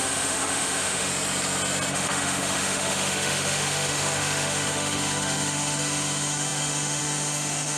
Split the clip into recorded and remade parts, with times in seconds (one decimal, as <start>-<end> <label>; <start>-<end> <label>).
0.0-1.1 remade; 1.1-1.9 recorded; 1.9-7.8 remade